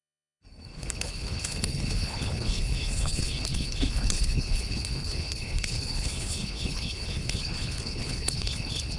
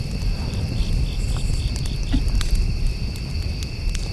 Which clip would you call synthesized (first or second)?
first